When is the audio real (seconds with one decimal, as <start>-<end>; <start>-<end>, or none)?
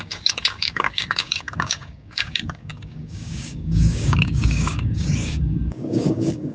none